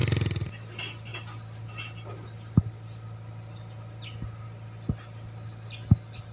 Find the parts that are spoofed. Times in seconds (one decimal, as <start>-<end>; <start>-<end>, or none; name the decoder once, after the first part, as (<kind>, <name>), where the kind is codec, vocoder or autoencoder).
none